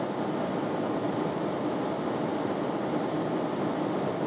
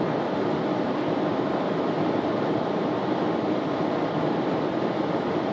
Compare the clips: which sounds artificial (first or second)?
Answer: second